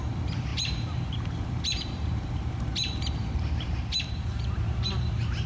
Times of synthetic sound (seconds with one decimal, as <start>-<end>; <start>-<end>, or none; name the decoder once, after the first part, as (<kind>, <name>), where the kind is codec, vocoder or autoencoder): 0.0-5.5 (vocoder, BigVGAN v2)